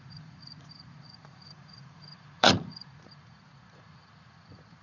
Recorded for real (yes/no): no